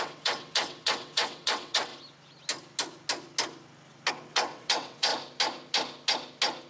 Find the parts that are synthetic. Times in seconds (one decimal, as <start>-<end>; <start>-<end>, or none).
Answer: 0.0-1.9; 4.1-5.1

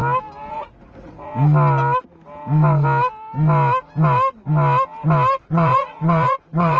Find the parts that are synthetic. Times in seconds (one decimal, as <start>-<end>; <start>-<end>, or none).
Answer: 0.5-1.3; 5.4-6.8

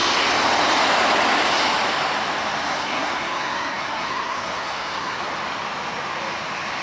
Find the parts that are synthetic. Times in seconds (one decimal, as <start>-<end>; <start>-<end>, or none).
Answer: 2.7-5.2

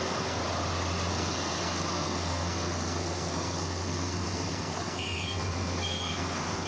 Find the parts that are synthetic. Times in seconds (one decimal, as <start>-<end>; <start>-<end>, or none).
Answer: 0.0-0.4; 1.1-6.7

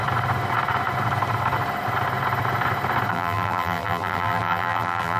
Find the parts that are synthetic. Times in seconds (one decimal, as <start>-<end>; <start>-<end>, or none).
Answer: 3.1-5.2

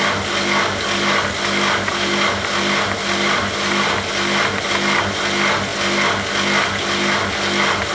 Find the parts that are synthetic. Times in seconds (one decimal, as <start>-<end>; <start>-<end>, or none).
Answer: none

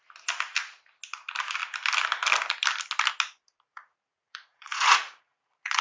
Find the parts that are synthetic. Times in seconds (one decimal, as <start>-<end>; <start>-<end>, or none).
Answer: 3.7-5.8

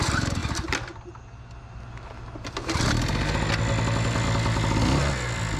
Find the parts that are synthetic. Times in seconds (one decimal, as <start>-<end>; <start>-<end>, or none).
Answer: none